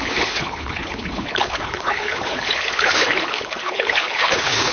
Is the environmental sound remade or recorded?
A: remade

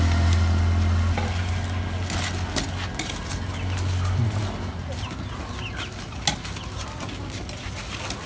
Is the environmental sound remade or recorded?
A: recorded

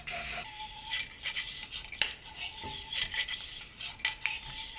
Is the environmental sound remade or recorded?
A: recorded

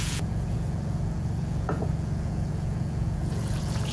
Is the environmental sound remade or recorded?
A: remade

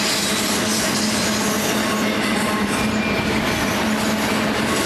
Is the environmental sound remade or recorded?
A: recorded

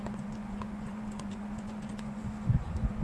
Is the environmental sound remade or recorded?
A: remade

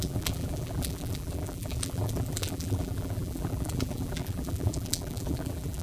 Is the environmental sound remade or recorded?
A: remade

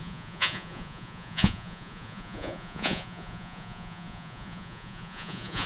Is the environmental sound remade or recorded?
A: remade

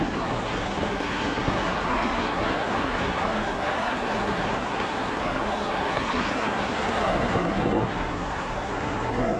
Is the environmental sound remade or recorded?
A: remade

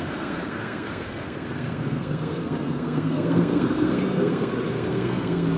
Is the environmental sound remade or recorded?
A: remade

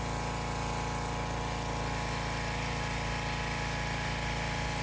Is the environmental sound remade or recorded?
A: recorded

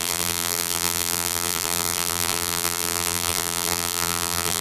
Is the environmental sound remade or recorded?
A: remade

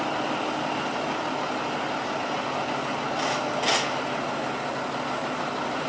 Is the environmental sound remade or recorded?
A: recorded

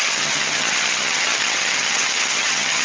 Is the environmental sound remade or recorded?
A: remade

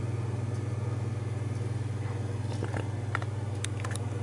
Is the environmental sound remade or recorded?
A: recorded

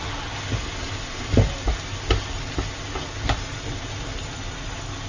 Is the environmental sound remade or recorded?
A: recorded